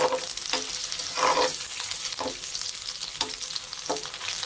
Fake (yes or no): no